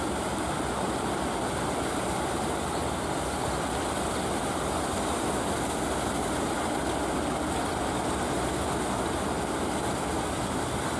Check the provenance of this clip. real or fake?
fake